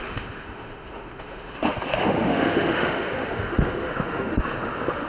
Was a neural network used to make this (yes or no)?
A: yes